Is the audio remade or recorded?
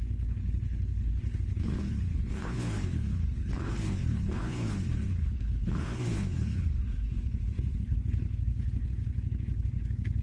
remade